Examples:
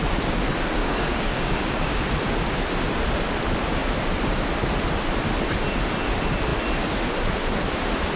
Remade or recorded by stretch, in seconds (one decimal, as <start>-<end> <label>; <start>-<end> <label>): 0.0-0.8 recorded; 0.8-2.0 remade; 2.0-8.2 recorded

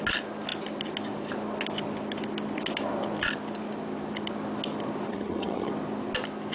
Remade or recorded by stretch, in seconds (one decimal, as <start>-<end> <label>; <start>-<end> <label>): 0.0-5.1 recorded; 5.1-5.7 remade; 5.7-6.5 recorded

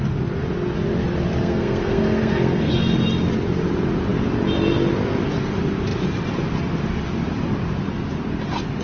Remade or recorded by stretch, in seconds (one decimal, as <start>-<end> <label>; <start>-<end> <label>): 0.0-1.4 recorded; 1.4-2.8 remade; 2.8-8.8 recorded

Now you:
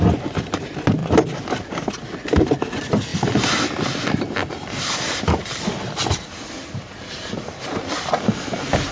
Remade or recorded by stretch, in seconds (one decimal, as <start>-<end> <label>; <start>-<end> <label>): 0.0-8.9 recorded

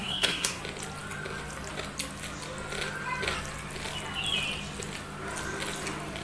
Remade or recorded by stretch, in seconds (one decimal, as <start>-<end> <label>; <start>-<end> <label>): 0.0-0.6 remade; 0.6-6.2 recorded